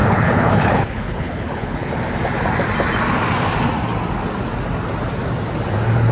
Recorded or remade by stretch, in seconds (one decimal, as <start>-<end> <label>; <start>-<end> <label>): 0.0-1.9 remade; 1.9-6.1 recorded